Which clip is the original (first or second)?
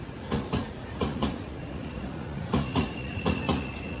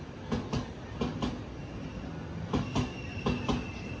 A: second